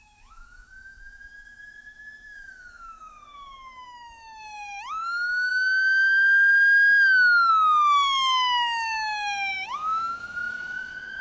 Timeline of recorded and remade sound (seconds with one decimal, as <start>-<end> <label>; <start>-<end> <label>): 0.0-5.5 remade; 5.5-7.5 recorded; 7.5-11.2 remade